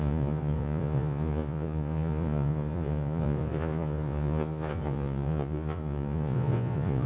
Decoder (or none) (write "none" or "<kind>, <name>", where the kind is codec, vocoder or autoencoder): vocoder, Vocos